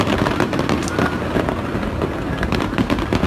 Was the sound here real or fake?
real